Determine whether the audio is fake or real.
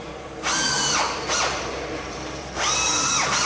fake